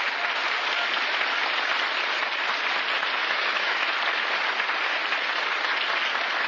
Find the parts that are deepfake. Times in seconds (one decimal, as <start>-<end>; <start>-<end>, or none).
3.2-4.0